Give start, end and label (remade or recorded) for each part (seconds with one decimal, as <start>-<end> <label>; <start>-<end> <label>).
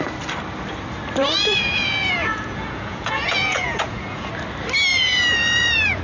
0.0-1.2 recorded; 1.2-4.3 remade; 4.3-4.9 recorded; 4.9-6.0 remade